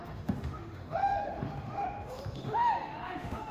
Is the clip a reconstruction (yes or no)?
yes